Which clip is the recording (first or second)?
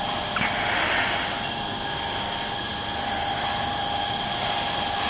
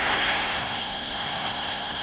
first